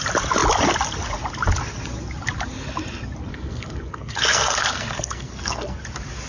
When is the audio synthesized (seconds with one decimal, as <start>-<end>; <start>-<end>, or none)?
3.3-5.8